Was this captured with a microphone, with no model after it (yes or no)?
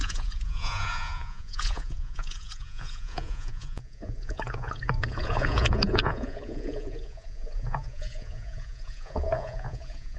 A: no